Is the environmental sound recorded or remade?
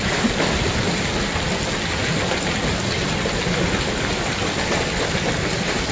recorded